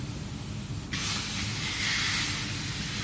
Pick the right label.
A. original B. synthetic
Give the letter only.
A